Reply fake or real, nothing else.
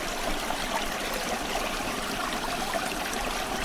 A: real